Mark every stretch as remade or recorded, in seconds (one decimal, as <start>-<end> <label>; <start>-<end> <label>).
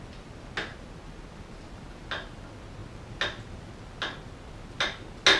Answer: 0.0-5.4 recorded